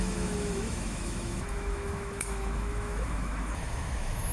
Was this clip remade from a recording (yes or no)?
yes